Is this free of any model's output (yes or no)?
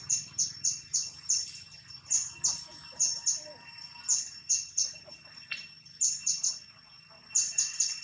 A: yes